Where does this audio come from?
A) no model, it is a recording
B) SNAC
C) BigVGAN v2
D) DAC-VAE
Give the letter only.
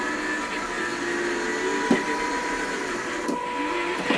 A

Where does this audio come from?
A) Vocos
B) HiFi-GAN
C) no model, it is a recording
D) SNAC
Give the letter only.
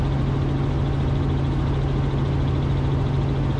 C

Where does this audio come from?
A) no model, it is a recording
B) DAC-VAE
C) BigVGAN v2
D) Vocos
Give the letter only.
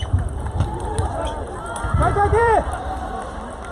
C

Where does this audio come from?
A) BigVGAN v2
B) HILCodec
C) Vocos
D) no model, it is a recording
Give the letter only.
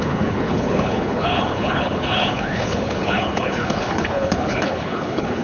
B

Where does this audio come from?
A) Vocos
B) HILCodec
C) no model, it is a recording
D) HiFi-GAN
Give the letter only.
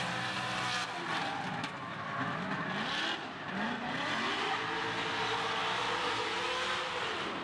C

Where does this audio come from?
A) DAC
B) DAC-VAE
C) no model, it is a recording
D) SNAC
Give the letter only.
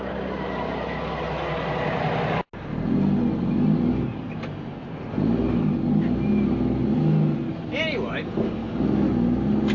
C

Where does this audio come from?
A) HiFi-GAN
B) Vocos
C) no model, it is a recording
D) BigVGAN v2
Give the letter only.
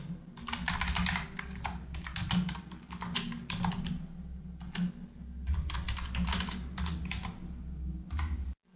C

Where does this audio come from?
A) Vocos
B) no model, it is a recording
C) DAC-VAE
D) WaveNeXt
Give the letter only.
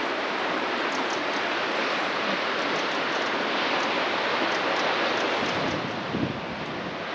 B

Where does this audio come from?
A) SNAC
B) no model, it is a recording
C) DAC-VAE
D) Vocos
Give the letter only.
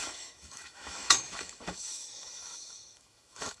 C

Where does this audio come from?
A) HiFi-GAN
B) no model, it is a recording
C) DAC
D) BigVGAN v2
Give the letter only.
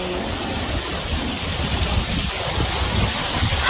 B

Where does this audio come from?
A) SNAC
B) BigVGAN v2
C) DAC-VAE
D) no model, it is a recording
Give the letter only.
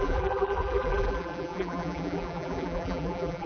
B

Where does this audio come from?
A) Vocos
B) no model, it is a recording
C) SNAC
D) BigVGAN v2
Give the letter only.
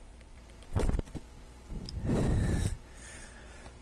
D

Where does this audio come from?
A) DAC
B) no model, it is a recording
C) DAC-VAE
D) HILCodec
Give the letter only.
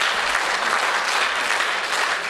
B